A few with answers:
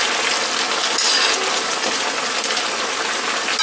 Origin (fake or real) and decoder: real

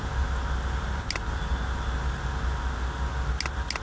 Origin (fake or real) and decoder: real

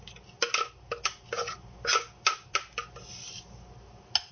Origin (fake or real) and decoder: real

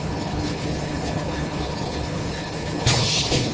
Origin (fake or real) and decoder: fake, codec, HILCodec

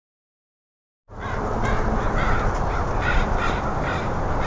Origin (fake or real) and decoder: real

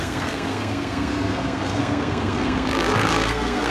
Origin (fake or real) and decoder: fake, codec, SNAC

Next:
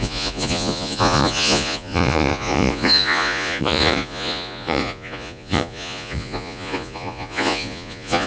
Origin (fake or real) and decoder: fake, vocoder, Vocos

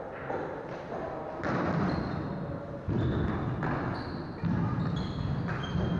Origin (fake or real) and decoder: real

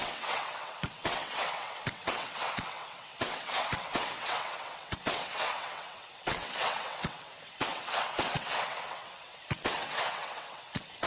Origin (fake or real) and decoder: fake, vocoder, WaveNeXt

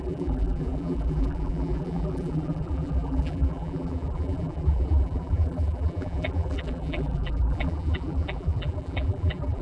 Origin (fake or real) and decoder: fake, vocoder, BigVGAN v2